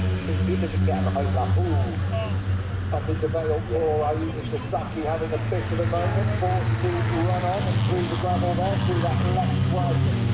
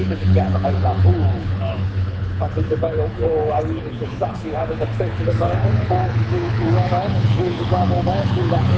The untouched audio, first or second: first